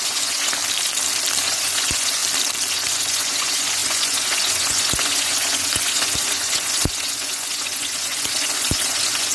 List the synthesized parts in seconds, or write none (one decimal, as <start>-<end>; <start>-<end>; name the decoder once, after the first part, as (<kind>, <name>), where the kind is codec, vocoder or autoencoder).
0.0-0.6 (vocoder, Vocos); 1.4-2.2; 2.7-9.3